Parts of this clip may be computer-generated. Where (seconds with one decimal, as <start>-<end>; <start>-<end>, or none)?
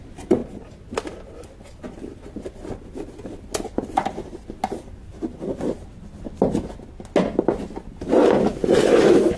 none